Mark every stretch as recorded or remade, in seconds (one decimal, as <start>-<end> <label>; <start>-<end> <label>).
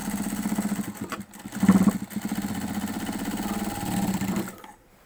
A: 0.0-5.1 recorded